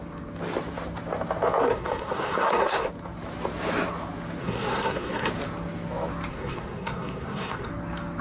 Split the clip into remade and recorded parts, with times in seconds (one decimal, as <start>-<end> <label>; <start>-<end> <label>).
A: 0.0-1.6 recorded; 1.6-2.9 remade; 2.9-4.4 recorded; 4.4-5.3 remade; 5.3-6.3 recorded; 6.3-7.7 remade; 7.7-8.2 recorded